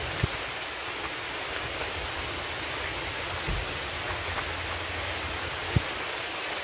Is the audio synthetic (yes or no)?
no